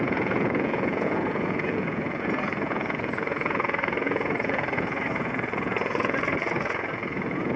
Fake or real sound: fake